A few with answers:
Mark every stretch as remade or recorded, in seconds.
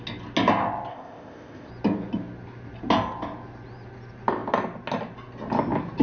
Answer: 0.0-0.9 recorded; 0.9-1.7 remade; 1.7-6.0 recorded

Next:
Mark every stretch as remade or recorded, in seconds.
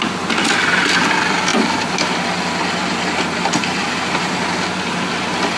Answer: 0.0-1.5 recorded; 1.5-2.1 remade; 2.1-3.6 recorded; 3.6-4.3 remade; 4.3-5.6 recorded